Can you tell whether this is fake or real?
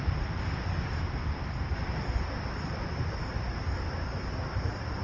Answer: real